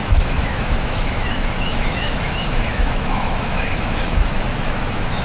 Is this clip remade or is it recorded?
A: remade